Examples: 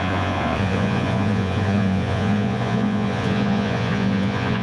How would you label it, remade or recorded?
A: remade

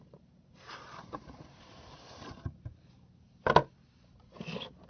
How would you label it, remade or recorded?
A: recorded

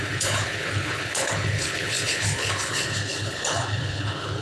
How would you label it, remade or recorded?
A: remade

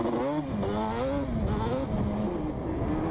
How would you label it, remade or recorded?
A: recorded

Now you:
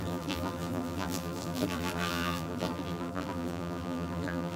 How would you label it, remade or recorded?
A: remade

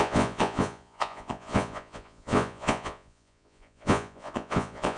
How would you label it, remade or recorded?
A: remade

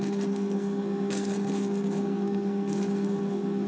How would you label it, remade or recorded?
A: remade